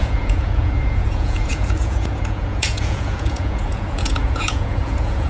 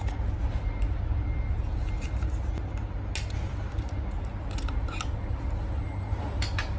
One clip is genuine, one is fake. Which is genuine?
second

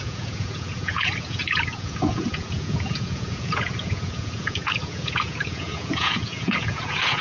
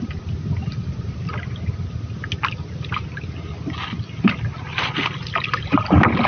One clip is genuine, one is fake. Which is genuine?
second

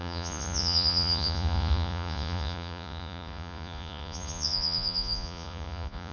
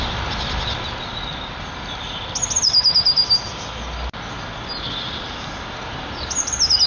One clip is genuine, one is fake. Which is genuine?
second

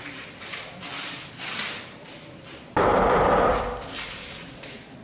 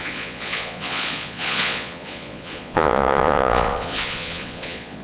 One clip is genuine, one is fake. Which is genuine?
first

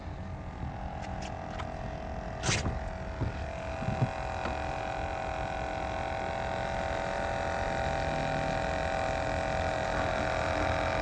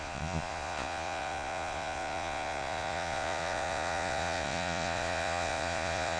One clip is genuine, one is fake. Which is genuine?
first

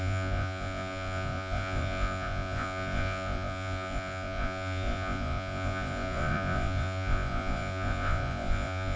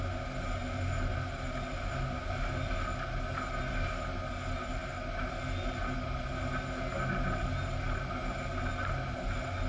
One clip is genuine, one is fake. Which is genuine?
second